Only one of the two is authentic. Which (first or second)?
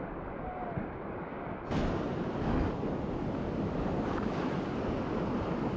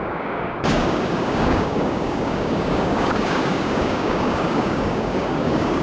first